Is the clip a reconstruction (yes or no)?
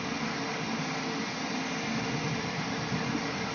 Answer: no